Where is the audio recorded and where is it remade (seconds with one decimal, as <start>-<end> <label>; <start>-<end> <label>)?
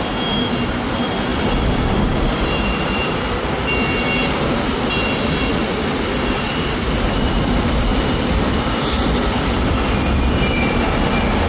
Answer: 0.0-1.3 recorded; 1.3-5.7 remade; 5.7-7.9 recorded; 7.9-8.9 remade; 8.9-11.5 recorded